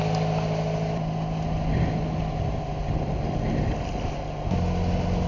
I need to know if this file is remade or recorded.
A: recorded